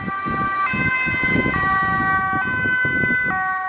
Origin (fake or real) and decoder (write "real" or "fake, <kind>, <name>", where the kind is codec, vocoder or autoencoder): real